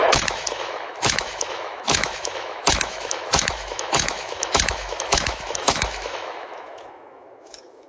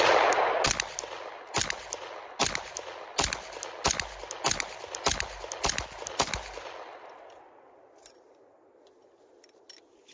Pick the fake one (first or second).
first